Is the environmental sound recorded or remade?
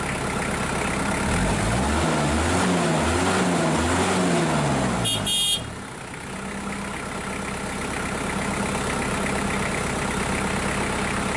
recorded